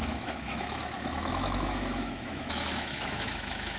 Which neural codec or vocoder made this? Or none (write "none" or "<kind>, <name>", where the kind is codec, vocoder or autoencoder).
autoencoder, DAC-VAE